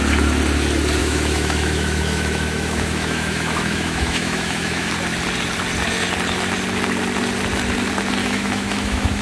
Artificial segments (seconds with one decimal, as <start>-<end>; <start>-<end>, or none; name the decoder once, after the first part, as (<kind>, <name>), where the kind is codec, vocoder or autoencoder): 1.0-4.9 (autoencoder, DAC-VAE); 8.2-9.2